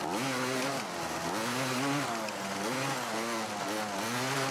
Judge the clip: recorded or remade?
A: recorded